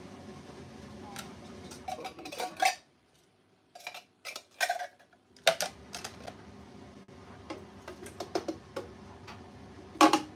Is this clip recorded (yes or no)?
yes